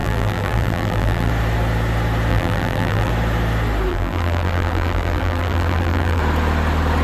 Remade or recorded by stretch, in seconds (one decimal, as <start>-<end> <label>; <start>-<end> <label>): 0.0-1.3 remade; 1.3-2.3 recorded; 2.3-3.1 remade; 3.1-3.9 recorded; 3.9-6.2 remade; 6.2-7.0 recorded